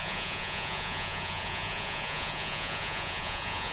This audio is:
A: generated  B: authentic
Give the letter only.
A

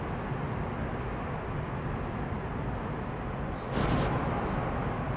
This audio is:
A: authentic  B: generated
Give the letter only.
A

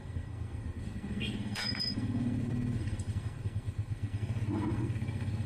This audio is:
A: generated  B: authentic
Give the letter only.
A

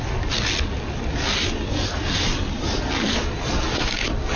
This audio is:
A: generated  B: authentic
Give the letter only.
B